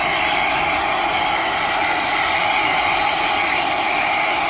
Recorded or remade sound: recorded